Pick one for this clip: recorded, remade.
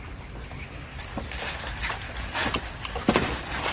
remade